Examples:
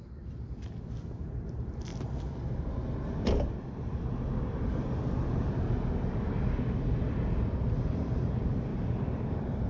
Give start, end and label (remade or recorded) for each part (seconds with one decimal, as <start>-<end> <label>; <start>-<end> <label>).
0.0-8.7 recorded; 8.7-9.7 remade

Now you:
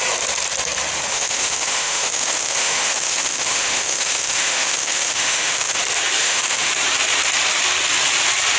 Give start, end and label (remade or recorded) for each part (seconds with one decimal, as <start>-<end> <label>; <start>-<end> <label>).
0.0-1.1 recorded; 1.1-5.8 remade; 5.8-6.2 recorded; 6.2-6.7 remade; 6.7-8.6 recorded

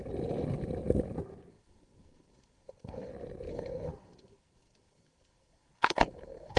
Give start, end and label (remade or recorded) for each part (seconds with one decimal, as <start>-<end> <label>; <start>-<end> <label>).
0.0-1.5 recorded; 1.5-3.1 remade; 3.1-3.5 recorded; 3.5-6.6 remade